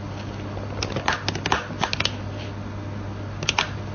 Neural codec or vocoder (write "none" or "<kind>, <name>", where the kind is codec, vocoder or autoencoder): none